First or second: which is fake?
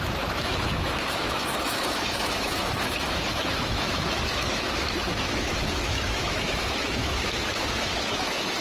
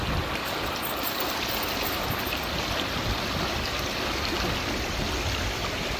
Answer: first